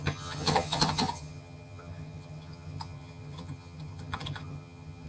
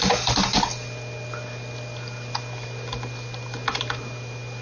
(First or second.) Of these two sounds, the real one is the second